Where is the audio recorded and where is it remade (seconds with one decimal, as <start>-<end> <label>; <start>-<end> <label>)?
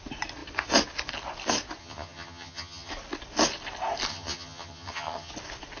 0.0-1.8 recorded; 1.8-2.9 remade; 2.9-4.1 recorded; 4.1-5.3 remade; 5.3-5.8 recorded